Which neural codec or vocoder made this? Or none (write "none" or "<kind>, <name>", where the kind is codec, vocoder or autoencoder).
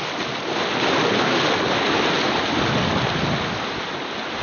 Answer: none